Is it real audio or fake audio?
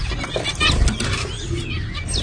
real